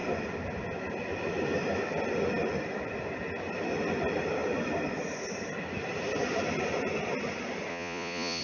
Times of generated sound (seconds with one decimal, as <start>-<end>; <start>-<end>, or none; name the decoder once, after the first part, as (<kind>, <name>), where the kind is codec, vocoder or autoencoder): 7.7-8.4 (vocoder, Vocos)

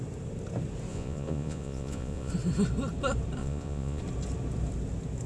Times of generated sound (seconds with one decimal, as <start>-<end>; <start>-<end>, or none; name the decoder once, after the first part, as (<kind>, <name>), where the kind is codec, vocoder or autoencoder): 0.9-2.3 (vocoder, Vocos); 3.4-4.0

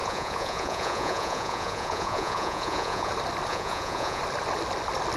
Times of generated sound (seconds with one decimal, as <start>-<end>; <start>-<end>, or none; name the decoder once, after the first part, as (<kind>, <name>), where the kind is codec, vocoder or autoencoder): 0.0-3.1 (vocoder, Vocos); 3.5-4.2

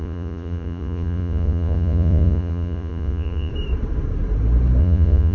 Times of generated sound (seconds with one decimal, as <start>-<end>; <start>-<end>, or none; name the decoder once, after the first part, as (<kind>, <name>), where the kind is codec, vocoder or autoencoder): 0.0-3.5 (vocoder, Vocos); 4.8-5.3

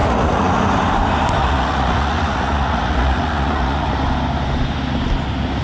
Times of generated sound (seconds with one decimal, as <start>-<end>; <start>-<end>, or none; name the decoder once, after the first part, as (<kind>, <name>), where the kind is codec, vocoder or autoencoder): 0.0-0.6 (vocoder, Vocos); 1.4-3.9

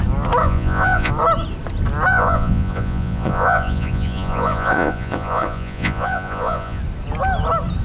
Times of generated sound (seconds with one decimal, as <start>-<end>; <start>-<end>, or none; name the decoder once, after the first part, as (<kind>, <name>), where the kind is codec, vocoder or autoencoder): 0.4-1.1 (vocoder, Vocos); 2.1-6.8

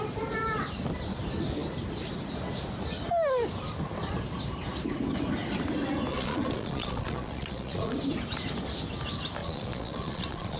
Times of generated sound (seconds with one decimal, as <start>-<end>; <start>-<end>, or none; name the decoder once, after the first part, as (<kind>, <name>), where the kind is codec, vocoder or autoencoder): 6.1-7.9 (vocoder, Vocos); 9.4-10.6

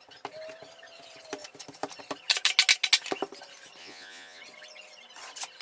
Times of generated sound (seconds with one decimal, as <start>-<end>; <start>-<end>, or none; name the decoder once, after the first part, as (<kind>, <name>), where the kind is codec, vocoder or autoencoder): 3.8-4.4 (vocoder, Vocos)